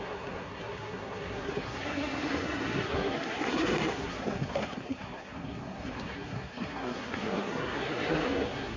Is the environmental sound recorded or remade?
remade